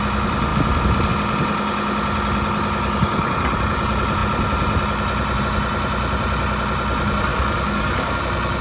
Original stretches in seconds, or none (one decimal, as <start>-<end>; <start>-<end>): 0.0-7.3; 8.2-8.6

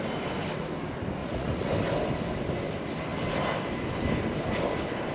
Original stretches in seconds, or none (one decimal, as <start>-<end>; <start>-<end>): 0.0-1.2; 1.7-5.1

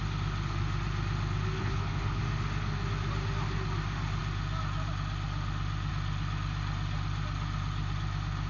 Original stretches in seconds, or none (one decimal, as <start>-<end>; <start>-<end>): 0.0-1.6; 2.2-8.5

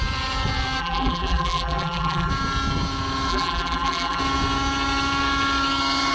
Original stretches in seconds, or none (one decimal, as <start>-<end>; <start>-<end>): 0.0-0.8; 2.3-3.3; 4.2-6.1

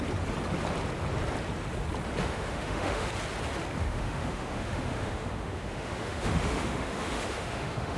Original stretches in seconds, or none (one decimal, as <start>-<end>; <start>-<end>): 0.0-2.2; 3.1-3.8